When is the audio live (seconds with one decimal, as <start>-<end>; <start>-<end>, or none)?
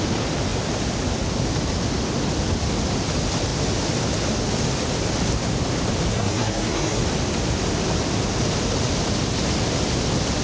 0.0-6.1; 7.0-10.4